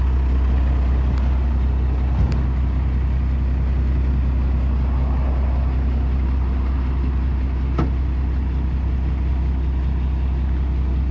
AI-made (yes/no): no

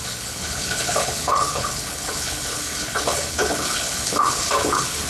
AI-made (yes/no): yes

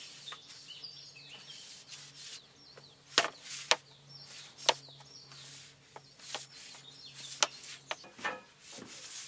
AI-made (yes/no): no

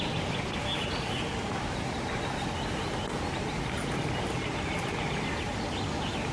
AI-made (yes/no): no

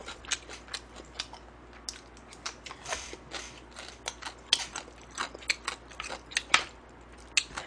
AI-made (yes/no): no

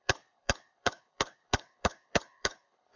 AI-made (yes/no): yes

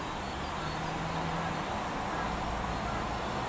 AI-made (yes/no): no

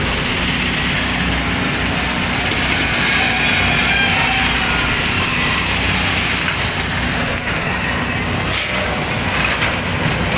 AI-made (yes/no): no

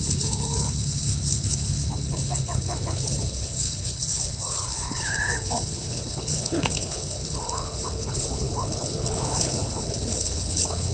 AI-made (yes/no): yes